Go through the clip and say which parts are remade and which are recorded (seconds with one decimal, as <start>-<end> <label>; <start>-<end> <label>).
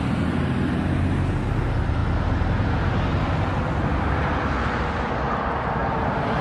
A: 0.0-5.8 recorded; 5.8-6.4 remade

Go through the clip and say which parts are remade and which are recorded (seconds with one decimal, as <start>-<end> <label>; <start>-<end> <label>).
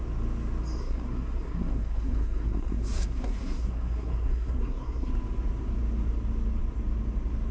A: 0.0-0.8 recorded; 0.8-5.1 remade; 5.1-7.5 recorded